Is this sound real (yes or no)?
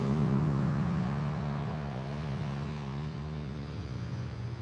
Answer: no